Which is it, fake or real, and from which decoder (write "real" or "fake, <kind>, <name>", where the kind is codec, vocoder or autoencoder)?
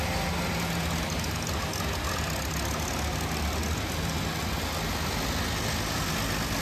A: real